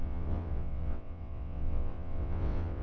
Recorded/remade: remade